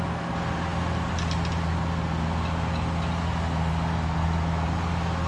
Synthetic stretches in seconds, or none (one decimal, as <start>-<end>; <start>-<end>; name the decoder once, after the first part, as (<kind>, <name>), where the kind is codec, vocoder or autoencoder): none